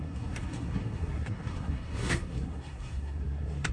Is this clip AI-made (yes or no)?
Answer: yes